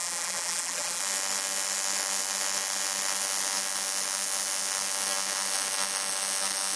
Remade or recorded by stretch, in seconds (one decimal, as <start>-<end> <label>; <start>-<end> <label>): 0.0-1.0 remade; 1.0-6.8 recorded